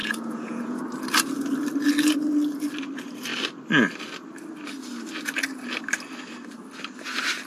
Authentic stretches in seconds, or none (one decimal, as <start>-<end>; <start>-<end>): 0.8-7.5